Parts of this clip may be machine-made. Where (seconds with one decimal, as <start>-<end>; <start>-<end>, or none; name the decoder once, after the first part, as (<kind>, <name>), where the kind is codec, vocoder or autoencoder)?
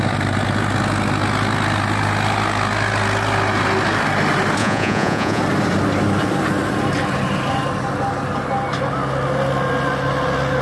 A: 4.6-5.4 (vocoder, Vocos)